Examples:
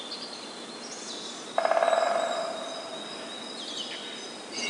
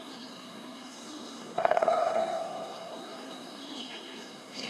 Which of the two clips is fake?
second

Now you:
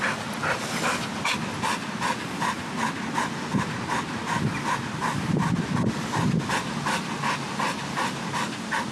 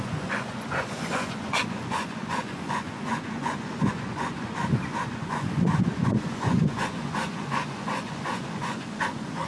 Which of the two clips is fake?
second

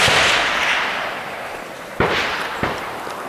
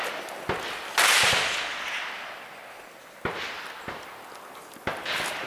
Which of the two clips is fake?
first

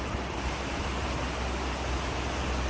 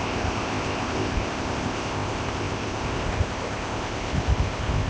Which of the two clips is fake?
second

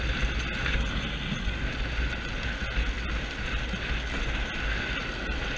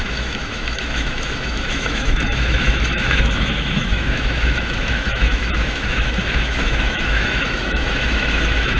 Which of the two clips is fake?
second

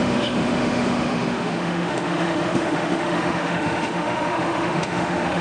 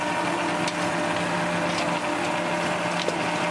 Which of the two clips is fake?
first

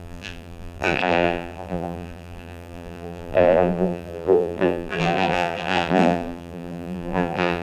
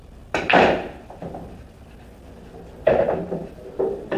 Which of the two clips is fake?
first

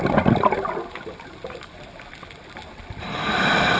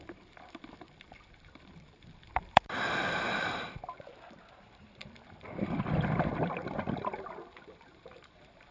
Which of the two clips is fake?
second